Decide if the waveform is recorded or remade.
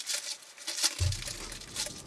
recorded